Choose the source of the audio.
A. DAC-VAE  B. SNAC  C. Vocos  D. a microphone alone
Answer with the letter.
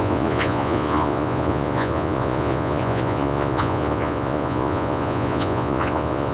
C